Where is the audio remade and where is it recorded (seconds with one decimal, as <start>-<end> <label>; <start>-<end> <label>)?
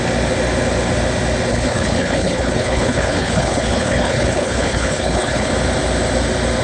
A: 0.0-1.5 recorded; 1.5-5.5 remade; 5.5-6.6 recorded